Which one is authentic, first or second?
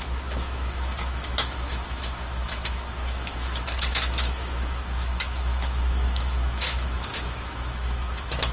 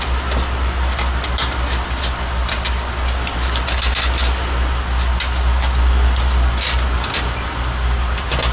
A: second